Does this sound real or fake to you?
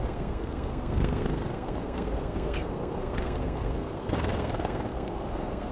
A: fake